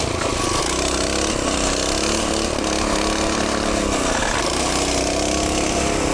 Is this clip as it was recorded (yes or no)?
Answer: yes